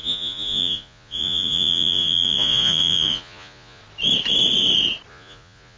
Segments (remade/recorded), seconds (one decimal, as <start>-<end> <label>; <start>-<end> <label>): 0.0-3.8 remade; 3.8-5.1 recorded; 5.1-5.8 remade